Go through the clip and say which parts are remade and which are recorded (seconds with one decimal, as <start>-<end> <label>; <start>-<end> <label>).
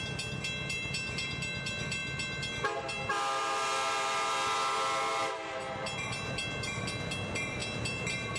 0.0-8.4 recorded